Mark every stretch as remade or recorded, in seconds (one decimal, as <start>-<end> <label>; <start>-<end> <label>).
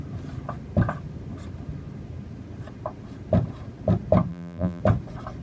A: 0.0-4.3 recorded; 4.3-4.8 remade; 4.8-5.4 recorded